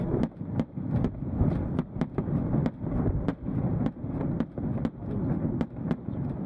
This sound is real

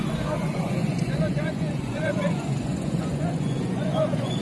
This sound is fake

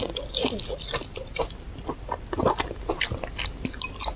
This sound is real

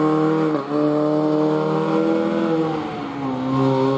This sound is real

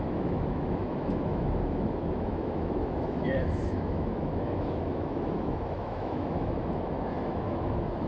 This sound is fake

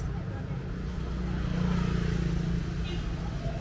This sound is real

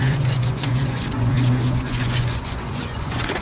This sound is fake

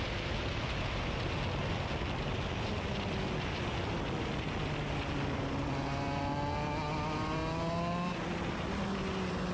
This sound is real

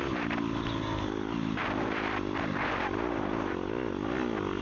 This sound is real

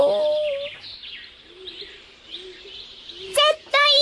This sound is real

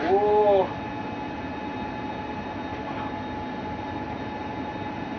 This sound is real